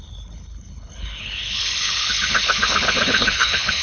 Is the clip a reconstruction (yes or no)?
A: yes